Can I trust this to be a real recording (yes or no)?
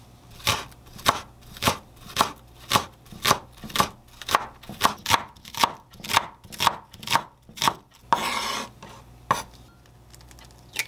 yes